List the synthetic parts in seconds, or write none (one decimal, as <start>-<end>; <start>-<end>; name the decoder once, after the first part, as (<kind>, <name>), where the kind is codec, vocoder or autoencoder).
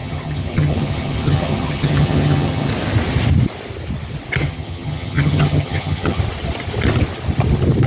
0.0-2.7 (vocoder, HiFi-GAN); 4.4-6.2